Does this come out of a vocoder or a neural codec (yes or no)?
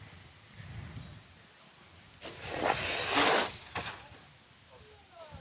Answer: no